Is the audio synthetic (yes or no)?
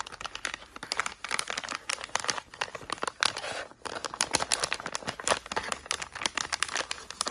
no